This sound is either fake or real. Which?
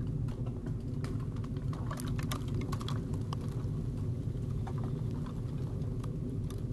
real